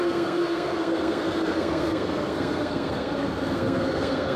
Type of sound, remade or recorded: remade